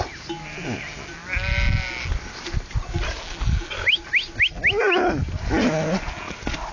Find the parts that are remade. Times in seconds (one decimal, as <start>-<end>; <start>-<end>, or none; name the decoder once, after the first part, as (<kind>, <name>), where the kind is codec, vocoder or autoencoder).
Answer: none